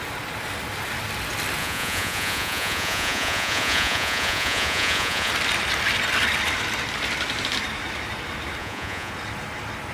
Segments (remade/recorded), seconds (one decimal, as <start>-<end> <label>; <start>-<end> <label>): 0.0-1.6 recorded; 1.6-5.3 remade; 5.3-8.6 recorded; 8.6-9.1 remade; 9.1-9.9 recorded